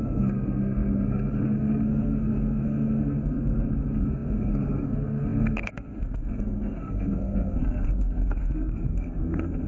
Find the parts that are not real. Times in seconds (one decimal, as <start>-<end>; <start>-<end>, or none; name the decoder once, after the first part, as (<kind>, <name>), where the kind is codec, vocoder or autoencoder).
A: 0.0-9.7 (codec, SNAC)